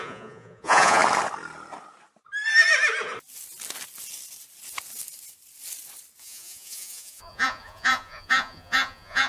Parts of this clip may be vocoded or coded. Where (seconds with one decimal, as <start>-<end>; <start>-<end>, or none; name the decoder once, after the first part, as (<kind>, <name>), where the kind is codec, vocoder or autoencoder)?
0.0-1.0 (vocoder, Vocos); 6.2-9.3